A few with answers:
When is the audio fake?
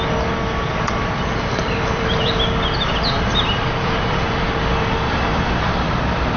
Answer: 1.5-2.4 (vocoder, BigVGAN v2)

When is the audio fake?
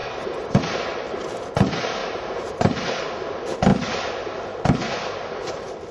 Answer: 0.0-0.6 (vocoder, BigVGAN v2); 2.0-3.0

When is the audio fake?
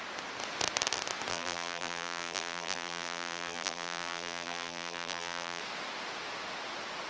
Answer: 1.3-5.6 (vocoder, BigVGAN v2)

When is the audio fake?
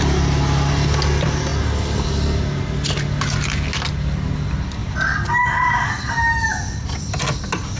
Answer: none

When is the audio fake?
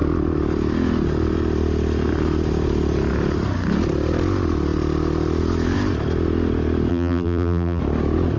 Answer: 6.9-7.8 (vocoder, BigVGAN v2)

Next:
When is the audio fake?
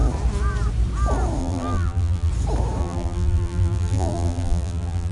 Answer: 1.4-2.3 (vocoder, BigVGAN v2); 2.8-5.1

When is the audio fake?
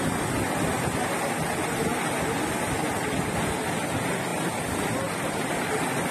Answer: none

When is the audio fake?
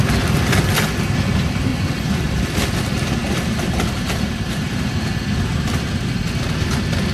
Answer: 1.7-2.4 (vocoder, BigVGAN v2); 3.2-5.3